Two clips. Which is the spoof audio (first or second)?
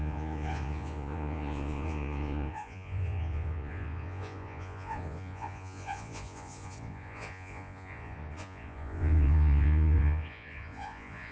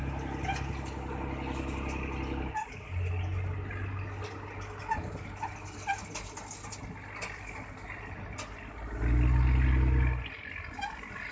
first